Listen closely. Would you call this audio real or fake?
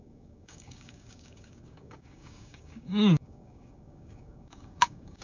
fake